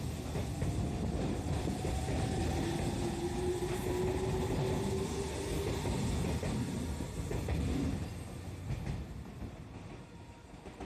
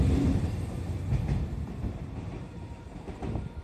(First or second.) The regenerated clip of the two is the second